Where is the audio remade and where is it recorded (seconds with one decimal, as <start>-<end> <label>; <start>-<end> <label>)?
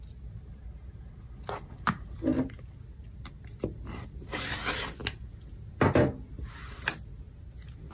0.0-7.9 recorded